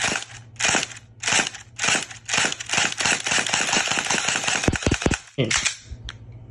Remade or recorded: recorded